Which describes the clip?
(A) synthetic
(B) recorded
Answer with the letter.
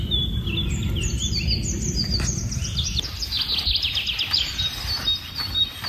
B